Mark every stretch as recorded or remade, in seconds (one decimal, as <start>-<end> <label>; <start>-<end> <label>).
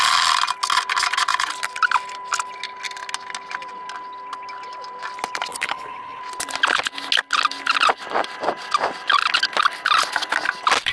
0.0-5.5 recorded; 5.5-6.2 remade; 6.2-10.9 recorded